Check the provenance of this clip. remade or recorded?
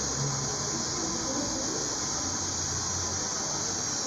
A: recorded